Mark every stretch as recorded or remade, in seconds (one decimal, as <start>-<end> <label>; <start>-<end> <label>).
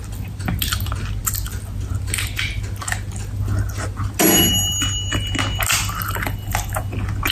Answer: 0.0-7.3 recorded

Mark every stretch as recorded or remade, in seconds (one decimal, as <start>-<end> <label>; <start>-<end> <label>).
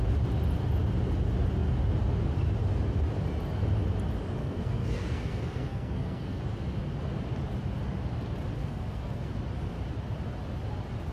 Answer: 0.0-4.4 recorded; 4.4-6.4 remade; 6.4-8.6 recorded; 8.6-9.3 remade; 9.3-11.1 recorded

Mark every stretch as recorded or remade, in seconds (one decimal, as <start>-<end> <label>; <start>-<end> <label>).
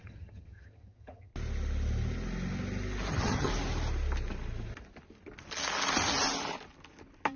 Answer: 0.0-1.3 remade; 1.3-3.1 recorded; 3.1-3.5 remade; 3.5-7.4 recorded